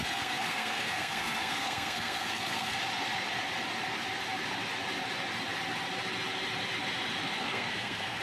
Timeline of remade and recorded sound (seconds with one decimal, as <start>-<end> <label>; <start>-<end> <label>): 0.0-2.8 remade; 2.8-7.4 recorded; 7.4-8.2 remade